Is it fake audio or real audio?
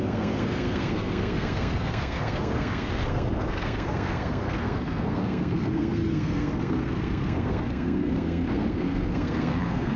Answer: fake